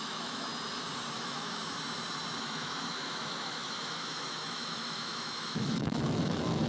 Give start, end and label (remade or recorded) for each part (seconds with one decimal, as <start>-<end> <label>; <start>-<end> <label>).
0.0-0.5 remade; 0.5-1.2 recorded; 1.2-1.6 remade; 1.6-2.4 recorded; 2.4-6.7 remade